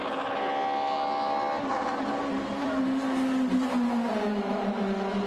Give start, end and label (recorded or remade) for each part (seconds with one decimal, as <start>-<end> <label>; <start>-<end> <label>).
0.0-4.3 recorded; 4.3-5.3 remade